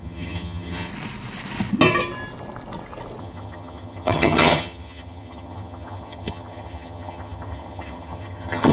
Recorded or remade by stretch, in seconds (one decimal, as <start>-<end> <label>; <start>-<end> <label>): 0.0-0.9 remade; 0.9-3.2 recorded; 3.2-8.7 remade